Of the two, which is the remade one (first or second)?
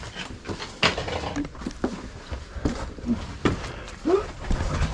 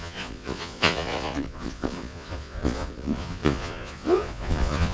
second